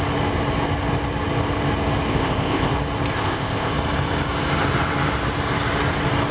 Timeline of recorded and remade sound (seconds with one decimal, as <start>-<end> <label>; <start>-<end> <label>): 0.0-2.1 recorded; 2.1-2.7 remade; 2.7-3.1 recorded; 3.1-3.7 remade; 3.7-6.3 recorded